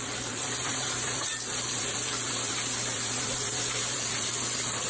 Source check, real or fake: fake